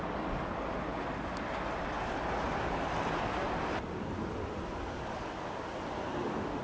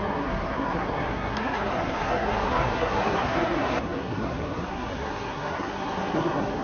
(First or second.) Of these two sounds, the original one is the first